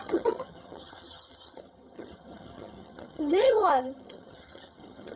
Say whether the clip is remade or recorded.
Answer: remade